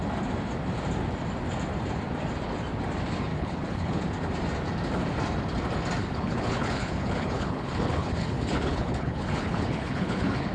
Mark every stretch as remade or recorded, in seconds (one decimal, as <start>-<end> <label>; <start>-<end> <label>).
0.0-3.3 recorded; 3.3-4.0 remade; 4.0-6.0 recorded; 6.0-10.5 remade